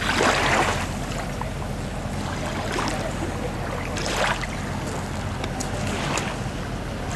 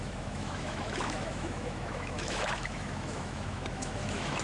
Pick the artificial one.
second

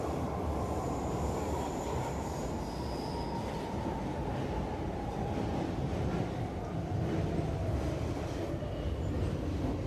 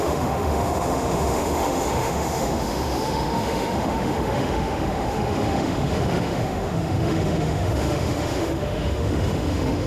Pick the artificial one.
second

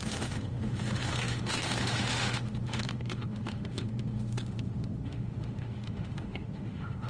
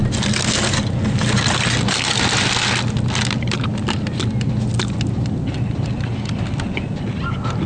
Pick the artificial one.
first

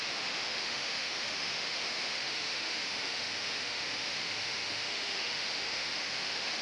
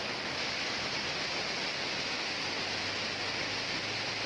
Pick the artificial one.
first